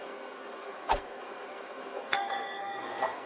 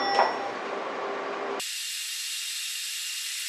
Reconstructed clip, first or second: first